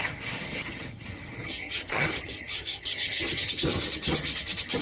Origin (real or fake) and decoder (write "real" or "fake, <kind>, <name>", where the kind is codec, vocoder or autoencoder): fake, vocoder, HiFi-GAN